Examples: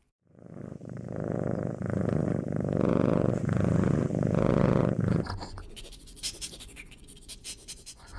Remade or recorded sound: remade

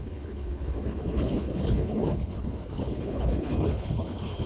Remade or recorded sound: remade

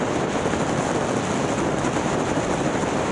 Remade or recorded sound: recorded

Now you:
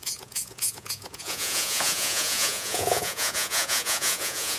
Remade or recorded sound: remade